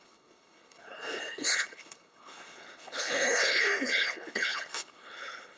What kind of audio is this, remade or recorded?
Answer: remade